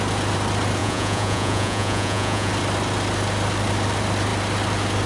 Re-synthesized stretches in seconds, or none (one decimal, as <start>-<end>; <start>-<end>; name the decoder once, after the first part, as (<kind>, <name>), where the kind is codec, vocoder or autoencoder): 0.8-2.5 (vocoder, Vocos)